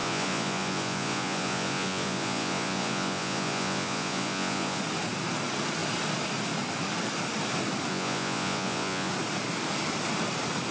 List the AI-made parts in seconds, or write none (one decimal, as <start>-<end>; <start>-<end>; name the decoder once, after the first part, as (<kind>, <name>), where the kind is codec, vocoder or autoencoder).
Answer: 0.0-4.8 (vocoder, Vocos); 7.9-9.1